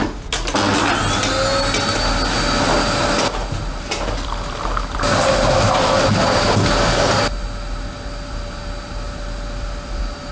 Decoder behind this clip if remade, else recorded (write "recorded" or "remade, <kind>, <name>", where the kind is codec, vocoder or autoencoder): recorded